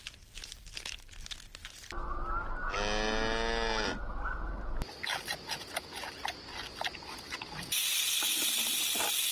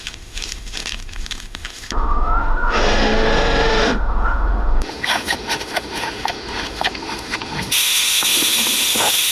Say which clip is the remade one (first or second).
second